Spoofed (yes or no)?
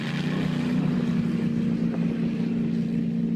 no